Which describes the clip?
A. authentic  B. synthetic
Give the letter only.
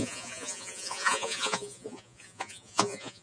B